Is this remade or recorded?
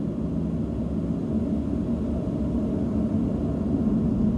recorded